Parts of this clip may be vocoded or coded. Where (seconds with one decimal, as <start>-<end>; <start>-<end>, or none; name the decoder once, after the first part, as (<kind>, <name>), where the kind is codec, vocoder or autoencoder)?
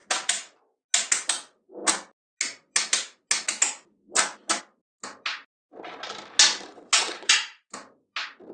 6.7-7.3 (vocoder, WaveNeXt)